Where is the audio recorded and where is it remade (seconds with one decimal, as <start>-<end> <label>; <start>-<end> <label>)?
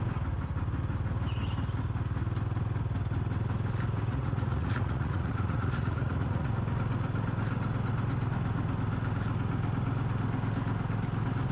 0.0-4.1 recorded; 4.1-6.5 remade; 6.5-11.5 recorded